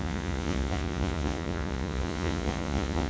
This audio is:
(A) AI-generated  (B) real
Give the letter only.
A